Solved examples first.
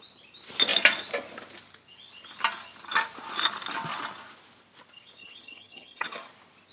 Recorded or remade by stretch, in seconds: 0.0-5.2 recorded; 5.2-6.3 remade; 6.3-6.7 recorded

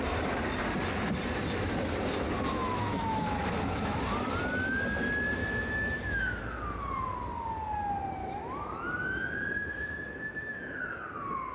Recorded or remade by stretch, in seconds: 0.0-2.6 recorded; 2.6-4.0 remade; 4.0-5.4 recorded; 5.4-6.4 remade; 6.4-8.2 recorded; 8.2-10.8 remade; 10.8-11.5 recorded